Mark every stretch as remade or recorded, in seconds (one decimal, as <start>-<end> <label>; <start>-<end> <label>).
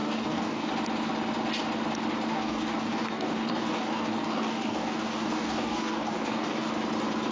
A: 0.0-0.7 remade; 0.7-2.3 recorded; 2.3-6.7 remade; 6.7-7.3 recorded